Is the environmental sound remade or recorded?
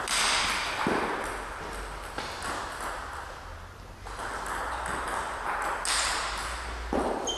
recorded